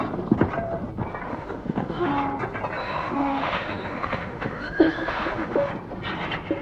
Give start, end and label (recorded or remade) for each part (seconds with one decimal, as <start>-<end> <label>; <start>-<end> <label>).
0.0-1.3 recorded; 1.3-2.1 remade; 2.1-2.8 recorded; 2.8-5.7 remade; 5.7-6.6 recorded